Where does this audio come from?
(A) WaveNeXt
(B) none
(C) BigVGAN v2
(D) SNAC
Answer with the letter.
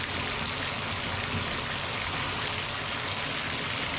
B